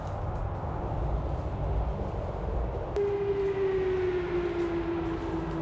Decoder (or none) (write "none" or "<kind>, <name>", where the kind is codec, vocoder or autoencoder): none